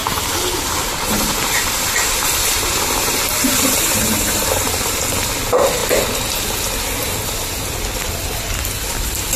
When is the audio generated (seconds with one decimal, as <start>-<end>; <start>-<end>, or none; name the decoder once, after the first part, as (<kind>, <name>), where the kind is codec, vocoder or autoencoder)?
0.0-5.0 (vocoder, BigVGAN v2)